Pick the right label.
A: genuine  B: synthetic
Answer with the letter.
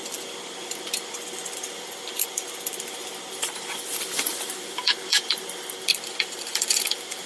B